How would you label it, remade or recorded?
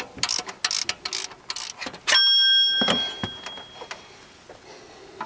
recorded